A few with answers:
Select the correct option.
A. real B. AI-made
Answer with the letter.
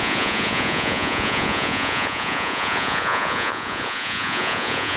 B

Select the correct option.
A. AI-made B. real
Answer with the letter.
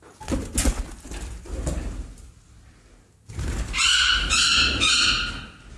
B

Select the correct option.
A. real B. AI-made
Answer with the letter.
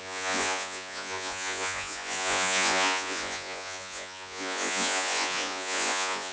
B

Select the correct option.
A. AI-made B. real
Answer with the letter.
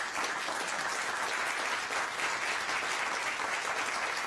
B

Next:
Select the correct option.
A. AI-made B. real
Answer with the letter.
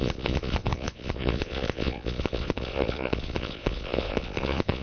A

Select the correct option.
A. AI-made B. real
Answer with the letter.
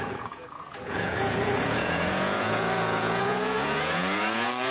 A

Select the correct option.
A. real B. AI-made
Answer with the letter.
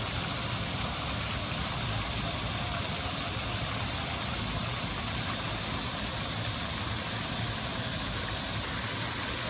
A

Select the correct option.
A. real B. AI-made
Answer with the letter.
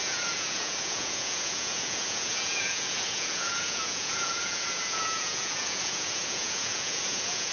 B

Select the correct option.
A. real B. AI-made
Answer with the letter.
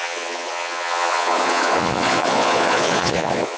B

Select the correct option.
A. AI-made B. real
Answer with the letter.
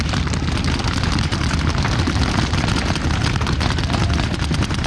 B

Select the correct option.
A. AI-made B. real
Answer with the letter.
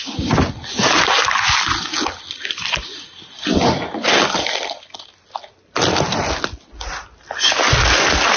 B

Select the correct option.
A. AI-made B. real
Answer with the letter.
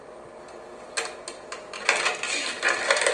B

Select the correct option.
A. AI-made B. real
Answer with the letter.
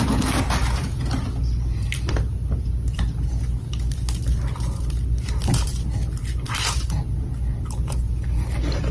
B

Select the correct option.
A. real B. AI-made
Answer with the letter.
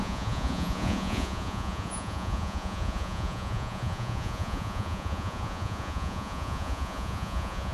B